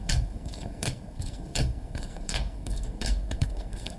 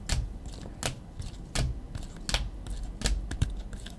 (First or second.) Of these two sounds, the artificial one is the first